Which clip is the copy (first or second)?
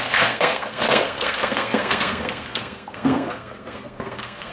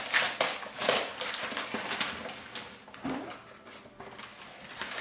first